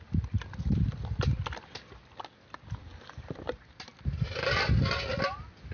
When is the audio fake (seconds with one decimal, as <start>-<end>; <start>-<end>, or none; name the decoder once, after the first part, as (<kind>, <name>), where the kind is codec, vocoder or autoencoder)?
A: none